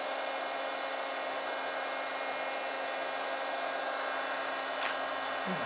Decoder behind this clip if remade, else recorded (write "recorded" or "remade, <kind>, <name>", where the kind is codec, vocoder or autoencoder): recorded